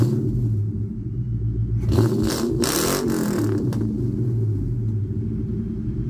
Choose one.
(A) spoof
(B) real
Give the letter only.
B